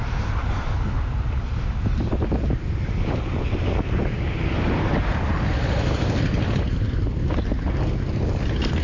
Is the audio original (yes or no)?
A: yes